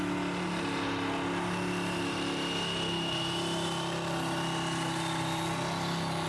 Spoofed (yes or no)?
no